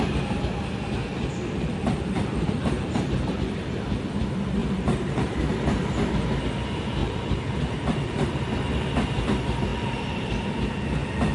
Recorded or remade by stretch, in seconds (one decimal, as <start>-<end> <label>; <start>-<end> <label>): 0.0-1.1 recorded; 1.1-3.8 remade; 3.8-4.6 recorded; 4.6-5.4 remade; 5.4-7.0 recorded; 7.0-8.8 remade; 8.8-9.7 recorded; 9.7-10.3 remade; 10.3-11.3 recorded

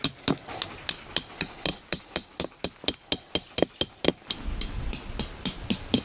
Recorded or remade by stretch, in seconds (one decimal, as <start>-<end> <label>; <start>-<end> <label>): 0.0-6.0 recorded